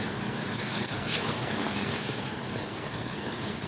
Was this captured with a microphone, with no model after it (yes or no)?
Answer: no